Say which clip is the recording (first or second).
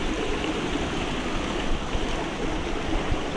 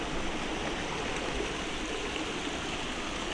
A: second